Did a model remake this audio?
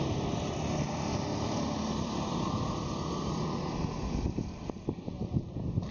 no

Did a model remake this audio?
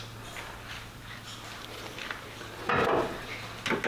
no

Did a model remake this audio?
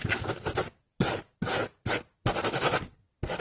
no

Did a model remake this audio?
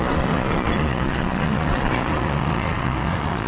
yes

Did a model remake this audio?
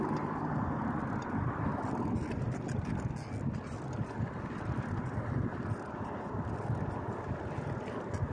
no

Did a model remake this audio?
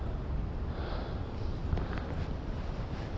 no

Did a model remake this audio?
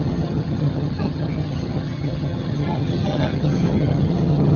yes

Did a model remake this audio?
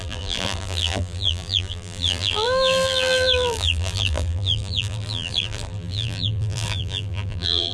yes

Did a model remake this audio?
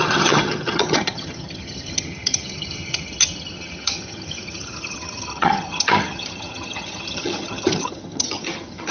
yes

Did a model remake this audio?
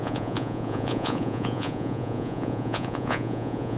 yes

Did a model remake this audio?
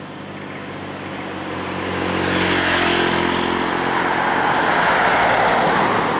no